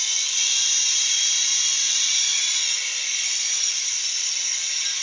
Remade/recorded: recorded